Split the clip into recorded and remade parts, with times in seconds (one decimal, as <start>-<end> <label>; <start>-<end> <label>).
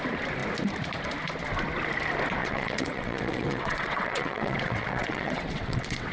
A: 0.0-2.4 recorded; 2.4-6.1 remade